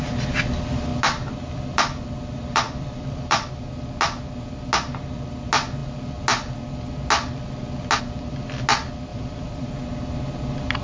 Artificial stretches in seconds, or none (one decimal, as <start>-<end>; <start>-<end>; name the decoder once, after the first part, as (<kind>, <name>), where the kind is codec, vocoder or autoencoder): 0.9-3.5 (vocoder, BigVGAN v2); 9.1-9.7